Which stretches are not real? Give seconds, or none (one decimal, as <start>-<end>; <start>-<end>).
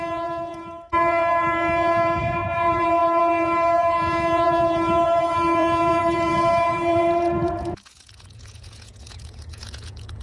0.0-10.2